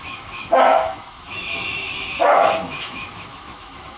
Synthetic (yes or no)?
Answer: yes